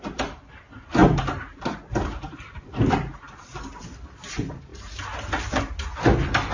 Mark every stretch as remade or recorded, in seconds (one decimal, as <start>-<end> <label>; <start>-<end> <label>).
0.0-6.5 recorded

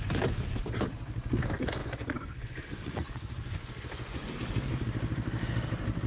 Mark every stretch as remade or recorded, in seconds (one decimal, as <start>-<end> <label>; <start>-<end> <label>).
0.0-1.8 recorded; 1.8-4.3 remade; 4.3-6.1 recorded

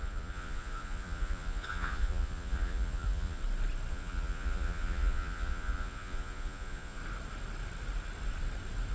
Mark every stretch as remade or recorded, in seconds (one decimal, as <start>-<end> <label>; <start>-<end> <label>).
0.0-3.4 remade; 3.4-3.9 recorded; 3.9-7.0 remade; 7.0-8.9 recorded

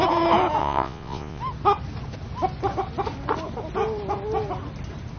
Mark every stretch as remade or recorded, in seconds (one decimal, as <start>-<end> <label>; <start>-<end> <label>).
0.0-0.6 recorded; 0.6-1.4 remade; 1.4-5.2 recorded

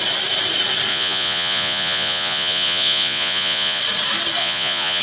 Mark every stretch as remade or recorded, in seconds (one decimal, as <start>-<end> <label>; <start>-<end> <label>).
0.0-0.9 recorded; 0.9-3.8 remade; 3.8-4.4 recorded; 4.4-5.0 remade

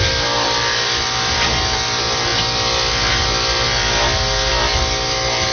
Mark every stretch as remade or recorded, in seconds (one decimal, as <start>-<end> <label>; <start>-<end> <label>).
0.0-5.5 recorded

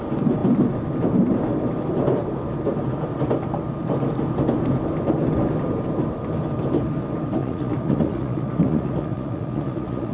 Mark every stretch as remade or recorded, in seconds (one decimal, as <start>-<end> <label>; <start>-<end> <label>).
0.0-7.4 recorded; 7.4-10.1 remade